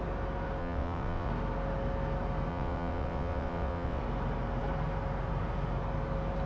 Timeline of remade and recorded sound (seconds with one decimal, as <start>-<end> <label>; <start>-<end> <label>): 0.0-0.6 recorded; 0.6-1.3 remade; 1.3-2.5 recorded; 2.5-4.0 remade; 4.0-6.5 recorded